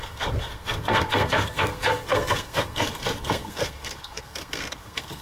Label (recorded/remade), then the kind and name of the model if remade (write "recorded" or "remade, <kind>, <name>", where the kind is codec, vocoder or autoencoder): remade, codec, SNAC